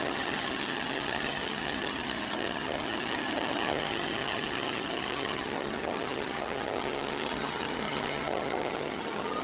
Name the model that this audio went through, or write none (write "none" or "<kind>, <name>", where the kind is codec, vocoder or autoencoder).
vocoder, HiFi-GAN